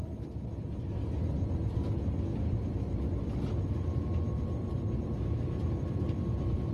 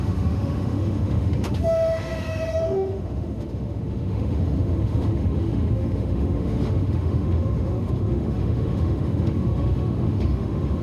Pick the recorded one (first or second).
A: first